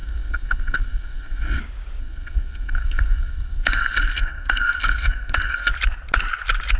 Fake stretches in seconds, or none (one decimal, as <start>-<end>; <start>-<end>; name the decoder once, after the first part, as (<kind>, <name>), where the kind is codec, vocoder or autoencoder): 0.0-1.6 (codec, SNAC); 2.0-5.7